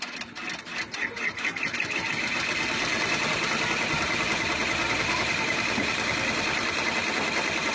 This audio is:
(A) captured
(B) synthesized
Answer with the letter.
A